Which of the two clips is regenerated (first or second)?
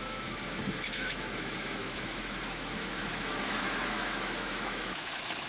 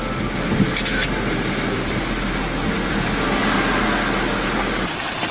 first